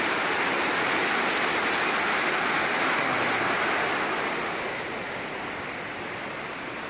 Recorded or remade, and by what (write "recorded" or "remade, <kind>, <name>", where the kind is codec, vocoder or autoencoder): recorded